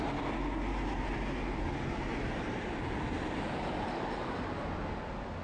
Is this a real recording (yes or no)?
yes